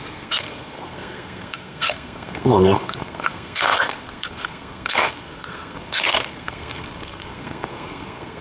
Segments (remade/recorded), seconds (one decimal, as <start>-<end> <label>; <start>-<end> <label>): 0.0-8.4 remade